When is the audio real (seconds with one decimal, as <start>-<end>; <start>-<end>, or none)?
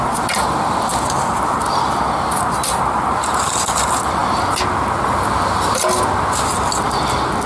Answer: 0.0-7.5